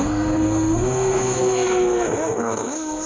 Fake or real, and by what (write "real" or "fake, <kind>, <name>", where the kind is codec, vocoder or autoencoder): fake, codec, SNAC